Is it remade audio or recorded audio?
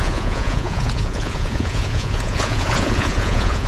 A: remade